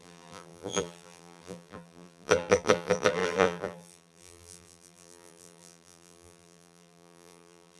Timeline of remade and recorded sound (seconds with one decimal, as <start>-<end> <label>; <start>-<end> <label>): 0.0-7.8 remade